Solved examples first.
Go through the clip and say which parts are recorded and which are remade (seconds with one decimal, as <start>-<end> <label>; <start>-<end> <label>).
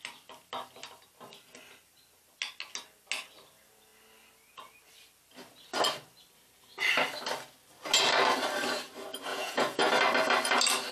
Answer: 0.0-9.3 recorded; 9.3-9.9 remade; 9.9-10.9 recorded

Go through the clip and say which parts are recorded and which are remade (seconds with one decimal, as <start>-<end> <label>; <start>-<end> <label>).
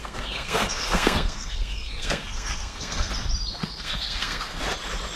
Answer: 0.0-3.1 remade; 3.1-3.6 recorded; 3.6-4.6 remade; 4.6-5.2 recorded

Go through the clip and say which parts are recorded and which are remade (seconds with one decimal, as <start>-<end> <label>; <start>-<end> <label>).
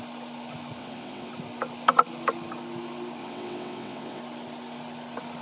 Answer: 0.0-0.8 recorded; 0.8-1.3 remade; 1.3-3.2 recorded; 3.2-4.2 remade; 4.2-5.4 recorded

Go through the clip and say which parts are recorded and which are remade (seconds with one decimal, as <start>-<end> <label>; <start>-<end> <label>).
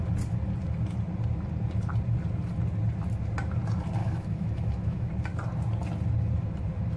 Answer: 0.0-4.0 recorded; 4.0-5.1 remade; 5.1-7.0 recorded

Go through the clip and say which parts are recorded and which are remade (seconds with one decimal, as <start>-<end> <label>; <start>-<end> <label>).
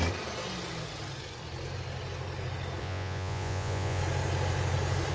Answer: 0.0-2.8 recorded; 2.8-4.0 remade; 4.0-5.1 recorded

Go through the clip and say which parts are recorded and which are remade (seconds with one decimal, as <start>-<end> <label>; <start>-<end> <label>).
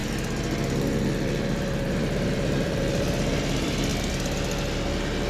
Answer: 0.0-1.2 recorded; 1.2-3.9 remade; 3.9-5.3 recorded